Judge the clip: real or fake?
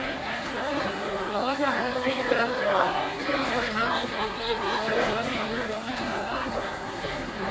fake